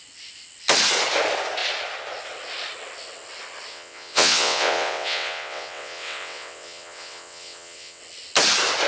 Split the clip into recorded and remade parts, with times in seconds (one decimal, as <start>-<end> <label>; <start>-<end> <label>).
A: 0.0-3.7 recorded; 3.7-8.0 remade; 8.0-8.9 recorded